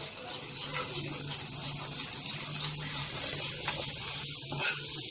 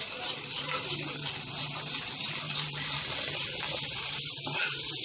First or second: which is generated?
second